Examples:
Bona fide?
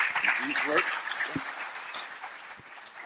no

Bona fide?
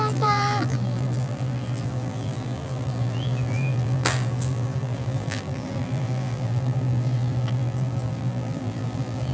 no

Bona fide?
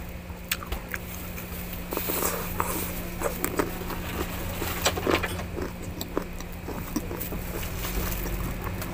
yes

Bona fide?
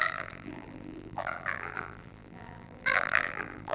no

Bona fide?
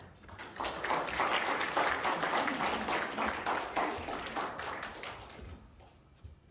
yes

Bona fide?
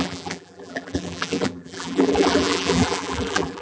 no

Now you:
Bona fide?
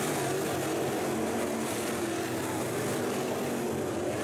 yes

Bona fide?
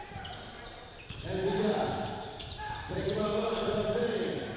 no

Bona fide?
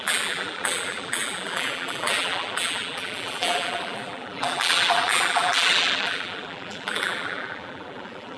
no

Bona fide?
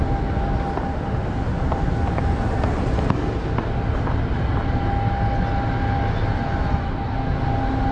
yes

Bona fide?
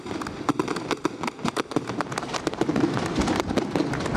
yes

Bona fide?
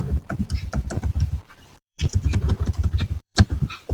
no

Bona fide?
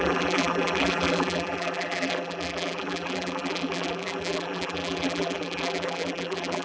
no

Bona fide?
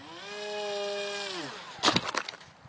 yes